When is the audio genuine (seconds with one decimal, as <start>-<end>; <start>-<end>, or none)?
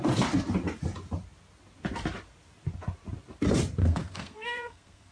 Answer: 0.0-3.8